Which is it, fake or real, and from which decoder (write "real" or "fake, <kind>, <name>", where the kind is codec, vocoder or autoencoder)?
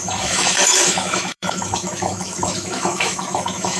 fake, autoencoder, DAC-VAE